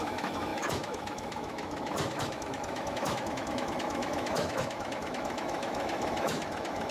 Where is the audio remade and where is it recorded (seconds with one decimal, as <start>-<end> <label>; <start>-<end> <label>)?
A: 0.0-6.9 remade